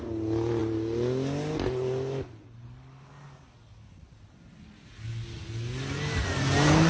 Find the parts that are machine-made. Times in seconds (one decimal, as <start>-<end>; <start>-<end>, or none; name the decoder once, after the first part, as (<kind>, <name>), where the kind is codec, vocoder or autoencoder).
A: none